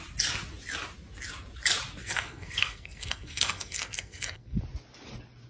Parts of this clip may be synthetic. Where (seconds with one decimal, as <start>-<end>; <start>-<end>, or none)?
2.0-4.6